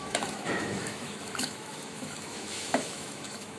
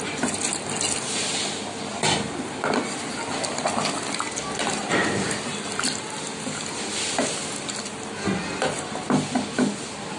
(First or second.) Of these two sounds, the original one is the second